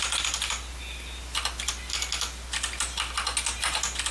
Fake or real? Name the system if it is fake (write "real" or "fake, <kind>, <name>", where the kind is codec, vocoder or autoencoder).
real